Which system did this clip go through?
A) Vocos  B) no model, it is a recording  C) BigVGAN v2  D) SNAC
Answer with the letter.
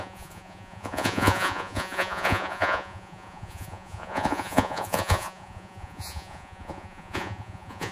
A